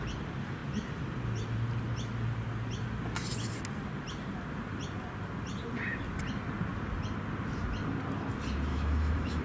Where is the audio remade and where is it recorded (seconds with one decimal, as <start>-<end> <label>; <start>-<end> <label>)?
0.0-8.7 recorded; 8.7-9.4 remade